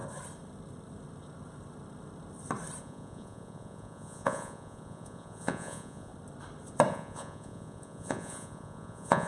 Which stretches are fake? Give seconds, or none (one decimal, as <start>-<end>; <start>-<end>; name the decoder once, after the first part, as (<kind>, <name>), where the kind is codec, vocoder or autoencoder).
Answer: 2.8-6.1 (vocoder, Vocos); 6.9-9.3